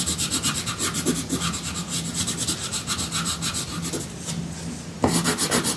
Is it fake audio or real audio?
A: real